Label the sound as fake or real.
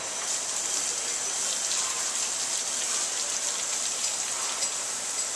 real